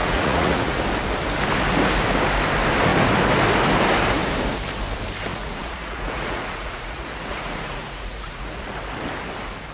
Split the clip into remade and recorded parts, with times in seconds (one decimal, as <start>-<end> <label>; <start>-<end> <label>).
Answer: 0.0-0.8 remade; 0.8-5.3 recorded; 5.3-8.7 remade; 8.7-9.7 recorded